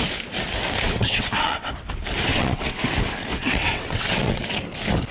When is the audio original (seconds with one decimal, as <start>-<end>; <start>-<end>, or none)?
0.0-1.0; 1.7-2.3; 2.9-3.3; 4.6-5.1